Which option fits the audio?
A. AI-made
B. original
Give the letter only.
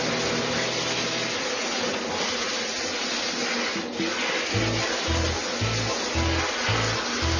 B